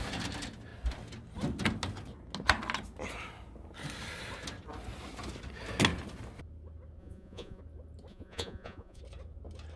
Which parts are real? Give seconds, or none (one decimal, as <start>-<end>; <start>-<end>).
0.0-7.0; 7.6-8.1; 9.0-9.8